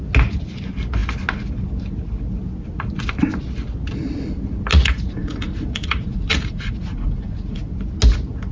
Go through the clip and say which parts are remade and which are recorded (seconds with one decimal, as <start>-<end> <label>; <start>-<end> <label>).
0.0-4.7 recorded; 4.7-7.7 remade; 7.7-8.5 recorded